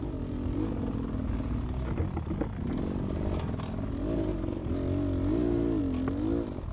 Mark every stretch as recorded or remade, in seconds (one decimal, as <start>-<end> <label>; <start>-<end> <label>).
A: 0.0-6.7 recorded

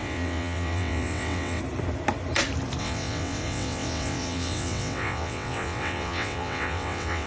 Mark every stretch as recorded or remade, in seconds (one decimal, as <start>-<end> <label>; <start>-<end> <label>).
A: 0.0-1.6 remade; 1.6-2.8 recorded; 2.8-7.3 remade

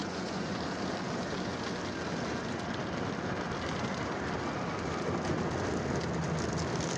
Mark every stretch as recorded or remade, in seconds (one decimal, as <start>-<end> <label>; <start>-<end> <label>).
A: 0.0-0.6 remade; 0.6-7.0 recorded

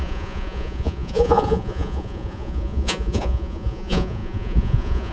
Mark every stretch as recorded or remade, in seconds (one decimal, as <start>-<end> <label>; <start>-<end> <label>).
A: 0.0-5.1 remade

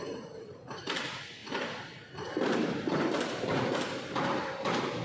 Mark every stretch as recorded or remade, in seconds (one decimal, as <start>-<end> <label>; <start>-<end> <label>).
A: 0.0-5.0 recorded